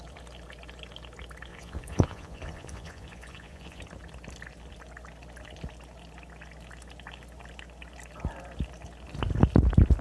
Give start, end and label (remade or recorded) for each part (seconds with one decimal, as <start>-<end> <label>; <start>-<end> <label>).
0.0-1.5 recorded; 1.5-3.8 remade; 3.8-10.0 recorded